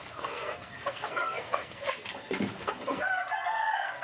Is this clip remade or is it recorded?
remade